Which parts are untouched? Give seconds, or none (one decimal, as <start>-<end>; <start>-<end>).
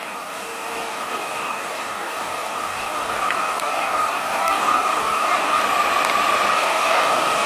5.6-6.5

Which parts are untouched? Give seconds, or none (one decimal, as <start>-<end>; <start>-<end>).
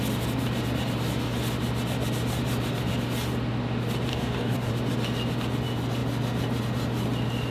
0.0-4.1; 4.7-7.5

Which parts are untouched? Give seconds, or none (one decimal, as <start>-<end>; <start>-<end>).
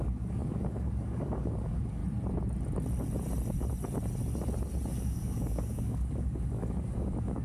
2.0-5.0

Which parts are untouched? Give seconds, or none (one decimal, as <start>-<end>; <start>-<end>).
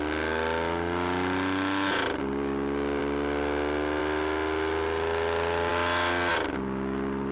0.0-7.3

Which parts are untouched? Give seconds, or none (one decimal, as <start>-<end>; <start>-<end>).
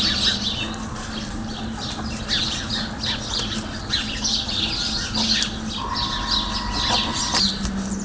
0.0-8.0